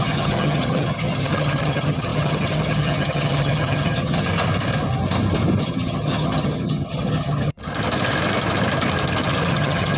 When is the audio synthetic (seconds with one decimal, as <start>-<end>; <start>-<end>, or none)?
0.0-4.3; 5.6-7.7; 9.5-10.0